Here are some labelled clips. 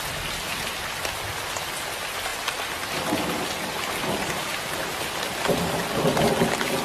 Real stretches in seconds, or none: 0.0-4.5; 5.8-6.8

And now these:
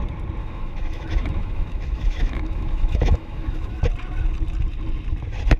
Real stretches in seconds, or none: 0.0-0.4; 3.8-5.6

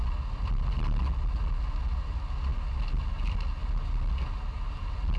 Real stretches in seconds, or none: 0.0-5.2

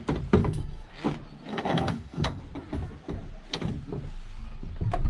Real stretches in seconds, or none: 0.0-0.4; 0.9-1.5; 2.4-5.1

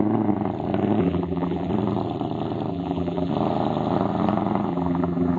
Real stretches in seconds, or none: 0.0-1.0; 1.7-2.7; 3.3-4.7